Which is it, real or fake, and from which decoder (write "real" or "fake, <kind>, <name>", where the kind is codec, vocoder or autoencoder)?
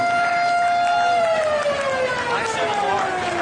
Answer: real